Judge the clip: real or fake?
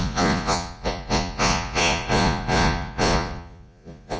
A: fake